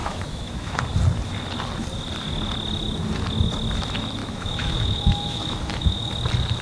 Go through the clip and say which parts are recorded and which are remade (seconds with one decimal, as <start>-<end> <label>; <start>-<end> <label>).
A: 0.0-0.8 remade; 0.8-4.2 recorded; 4.2-6.1 remade; 6.1-6.6 recorded